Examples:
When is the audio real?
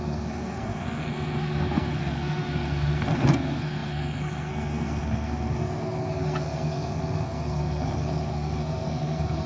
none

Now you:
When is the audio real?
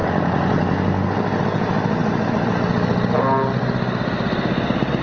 0.0-5.0